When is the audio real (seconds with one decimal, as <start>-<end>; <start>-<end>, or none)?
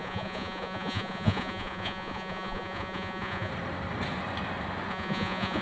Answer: 3.5-4.9